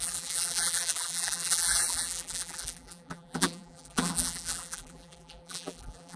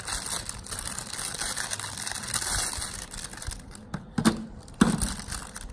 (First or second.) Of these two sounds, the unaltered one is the second